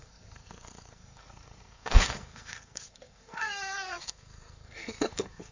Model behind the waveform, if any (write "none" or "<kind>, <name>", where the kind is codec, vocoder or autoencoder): codec, SNAC